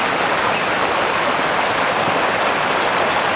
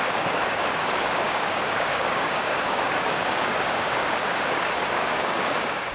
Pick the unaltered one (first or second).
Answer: first